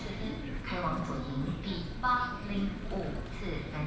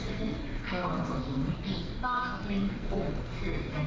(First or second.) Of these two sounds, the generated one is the second